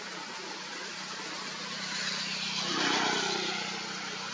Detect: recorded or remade recorded